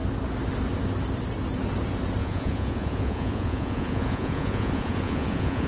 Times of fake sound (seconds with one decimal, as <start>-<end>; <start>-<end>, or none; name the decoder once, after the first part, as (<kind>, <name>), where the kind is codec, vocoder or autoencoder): 2.2-5.7 (vocoder, Vocos)

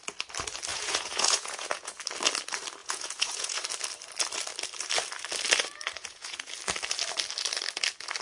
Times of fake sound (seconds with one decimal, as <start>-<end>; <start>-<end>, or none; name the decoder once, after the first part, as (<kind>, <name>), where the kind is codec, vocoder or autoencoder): 0.7-2.0 (vocoder, Vocos); 2.8-3.6; 6.0-6.5

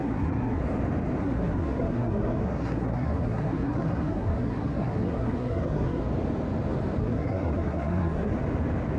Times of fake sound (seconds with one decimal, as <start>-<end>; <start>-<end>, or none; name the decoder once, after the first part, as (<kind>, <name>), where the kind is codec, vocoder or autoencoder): 0.0-0.6 (codec, SNAC); 1.2-6.0; 7.0-8.3

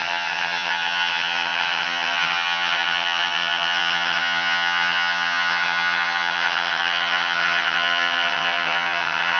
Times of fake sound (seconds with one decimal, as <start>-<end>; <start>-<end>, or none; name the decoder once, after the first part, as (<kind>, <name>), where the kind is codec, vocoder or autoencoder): 0.0-9.4 (vocoder, HiFi-GAN)

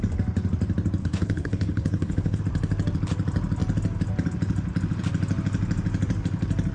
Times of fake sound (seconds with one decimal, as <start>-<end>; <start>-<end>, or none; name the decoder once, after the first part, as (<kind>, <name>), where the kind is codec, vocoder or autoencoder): 1.0-2.4 (codec, HILCodec)

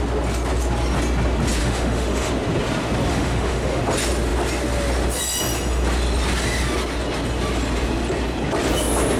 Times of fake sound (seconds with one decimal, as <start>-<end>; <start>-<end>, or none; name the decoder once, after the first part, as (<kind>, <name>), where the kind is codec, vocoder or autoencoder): 1.6-2.3 (autoencoder, DAC-VAE); 3.1-3.8